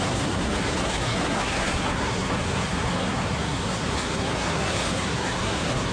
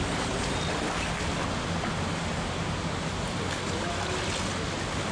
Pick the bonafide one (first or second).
second